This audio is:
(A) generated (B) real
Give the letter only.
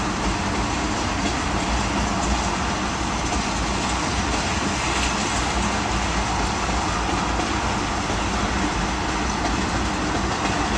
B